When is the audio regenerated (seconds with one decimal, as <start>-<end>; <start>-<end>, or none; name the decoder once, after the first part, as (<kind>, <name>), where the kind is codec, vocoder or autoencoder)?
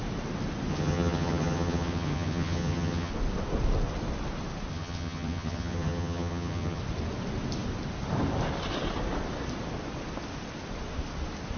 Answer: 0.7-3.1 (vocoder, HiFi-GAN); 4.7-6.8